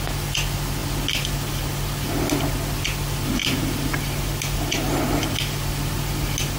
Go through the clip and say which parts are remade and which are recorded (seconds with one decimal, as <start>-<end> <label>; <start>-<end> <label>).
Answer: 0.0-6.6 recorded